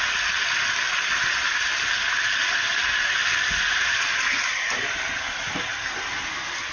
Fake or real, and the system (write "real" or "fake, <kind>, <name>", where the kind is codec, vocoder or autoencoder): real